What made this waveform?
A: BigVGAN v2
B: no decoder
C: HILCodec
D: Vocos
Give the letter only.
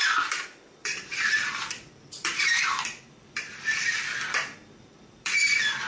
A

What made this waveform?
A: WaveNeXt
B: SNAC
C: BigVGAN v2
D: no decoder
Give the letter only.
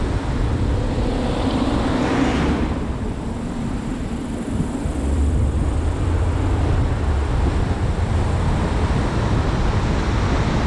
C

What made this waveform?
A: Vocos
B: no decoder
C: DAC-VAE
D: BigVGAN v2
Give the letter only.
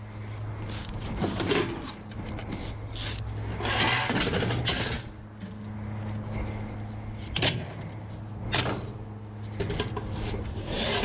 B